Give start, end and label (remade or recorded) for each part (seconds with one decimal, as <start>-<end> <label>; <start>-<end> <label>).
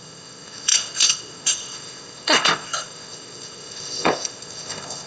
0.0-5.1 remade